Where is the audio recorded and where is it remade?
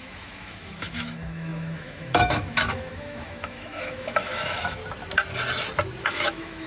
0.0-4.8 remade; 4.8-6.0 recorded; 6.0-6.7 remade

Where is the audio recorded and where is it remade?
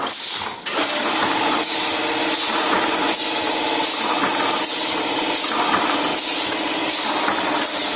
0.0-8.0 recorded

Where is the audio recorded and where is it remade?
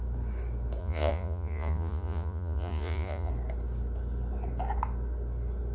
0.0-0.8 recorded; 0.8-3.3 remade; 3.3-5.7 recorded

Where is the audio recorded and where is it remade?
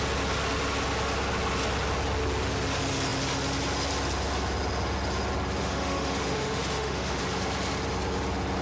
0.0-5.6 recorded; 5.6-7.2 remade; 7.2-8.6 recorded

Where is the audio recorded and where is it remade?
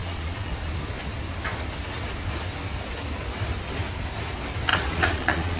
0.0-0.7 remade; 0.7-4.7 recorded; 4.7-5.6 remade